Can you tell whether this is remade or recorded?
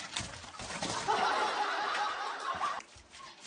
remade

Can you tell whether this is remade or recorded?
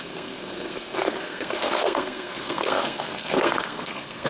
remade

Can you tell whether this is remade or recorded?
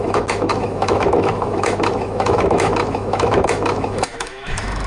remade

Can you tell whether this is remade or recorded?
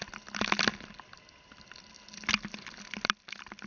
recorded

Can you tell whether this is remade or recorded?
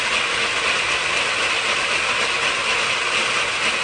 recorded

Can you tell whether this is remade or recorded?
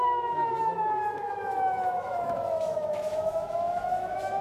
remade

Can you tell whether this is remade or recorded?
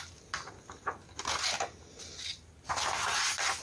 recorded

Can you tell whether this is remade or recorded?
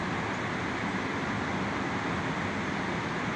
recorded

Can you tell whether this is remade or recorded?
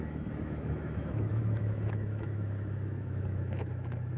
remade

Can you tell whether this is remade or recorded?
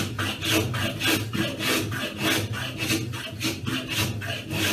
recorded